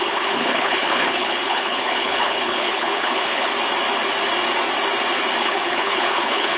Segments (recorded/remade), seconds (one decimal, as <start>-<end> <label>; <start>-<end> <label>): 0.0-3.5 remade; 3.5-5.4 recorded; 5.4-6.6 remade